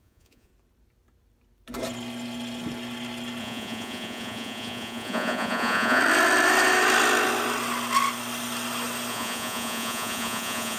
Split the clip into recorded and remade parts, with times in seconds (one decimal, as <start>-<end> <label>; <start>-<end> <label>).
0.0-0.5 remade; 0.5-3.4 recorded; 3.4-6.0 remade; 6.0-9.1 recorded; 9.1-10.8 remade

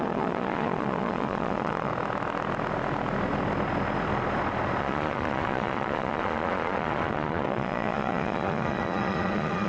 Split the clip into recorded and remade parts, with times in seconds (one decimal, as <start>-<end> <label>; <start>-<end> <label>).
0.0-1.9 remade; 1.9-4.8 recorded; 4.8-9.7 remade

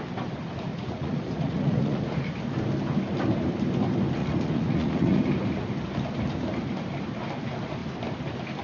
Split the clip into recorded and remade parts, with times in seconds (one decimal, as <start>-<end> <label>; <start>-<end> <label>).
0.0-0.7 recorded; 0.7-2.0 remade; 2.0-4.2 recorded; 4.2-5.2 remade; 5.2-8.6 recorded

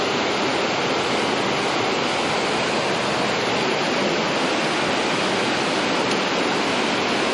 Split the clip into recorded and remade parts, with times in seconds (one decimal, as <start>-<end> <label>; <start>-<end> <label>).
0.0-7.3 recorded

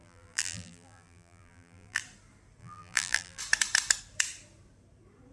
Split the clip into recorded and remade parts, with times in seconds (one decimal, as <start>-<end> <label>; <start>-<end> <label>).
0.0-2.0 remade; 2.0-2.6 recorded; 2.6-3.4 remade; 3.4-5.3 recorded

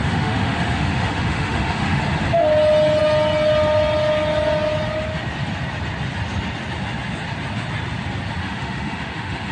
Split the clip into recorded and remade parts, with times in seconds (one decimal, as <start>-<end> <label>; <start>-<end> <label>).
0.0-2.0 remade; 2.0-8.4 recorded; 8.4-9.5 remade